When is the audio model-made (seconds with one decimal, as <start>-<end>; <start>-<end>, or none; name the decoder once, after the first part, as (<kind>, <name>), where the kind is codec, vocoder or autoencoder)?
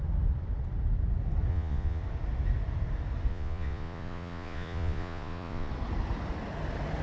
1.5-2.0 (vocoder, Vocos); 3.3-5.7